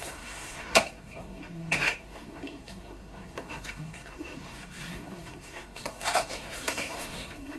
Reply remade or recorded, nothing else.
remade